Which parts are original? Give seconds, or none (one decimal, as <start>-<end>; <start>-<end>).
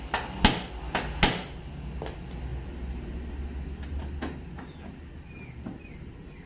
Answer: 0.0-6.5